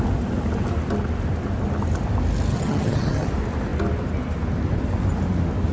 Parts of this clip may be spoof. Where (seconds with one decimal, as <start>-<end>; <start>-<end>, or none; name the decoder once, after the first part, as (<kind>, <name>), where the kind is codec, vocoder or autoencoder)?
2.5-3.3 (vocoder, HiFi-GAN)